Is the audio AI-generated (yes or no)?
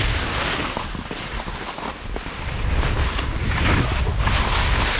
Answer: no